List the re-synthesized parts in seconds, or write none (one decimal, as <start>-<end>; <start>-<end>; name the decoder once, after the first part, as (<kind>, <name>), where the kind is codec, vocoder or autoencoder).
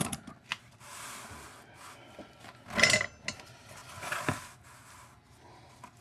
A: none